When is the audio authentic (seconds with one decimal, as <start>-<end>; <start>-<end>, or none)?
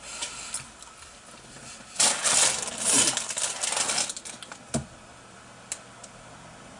0.0-6.8